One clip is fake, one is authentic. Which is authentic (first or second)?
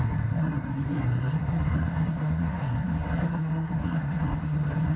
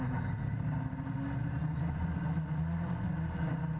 second